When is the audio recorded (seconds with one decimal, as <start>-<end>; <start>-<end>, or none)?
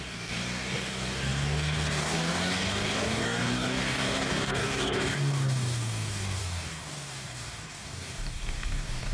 none